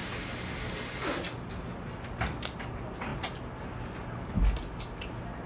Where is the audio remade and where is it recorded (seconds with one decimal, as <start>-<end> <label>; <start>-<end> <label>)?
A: 0.0-5.5 recorded